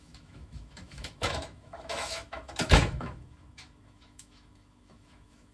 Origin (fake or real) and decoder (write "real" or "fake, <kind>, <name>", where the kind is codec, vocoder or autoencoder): fake, autoencoder, DAC-VAE